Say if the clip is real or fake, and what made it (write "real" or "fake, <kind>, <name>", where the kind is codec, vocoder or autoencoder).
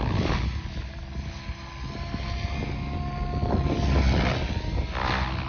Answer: real